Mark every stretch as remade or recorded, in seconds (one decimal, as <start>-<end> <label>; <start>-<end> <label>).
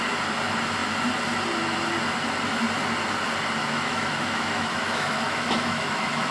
0.0-3.6 recorded; 3.6-6.3 remade